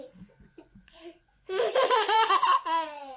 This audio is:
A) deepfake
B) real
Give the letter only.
A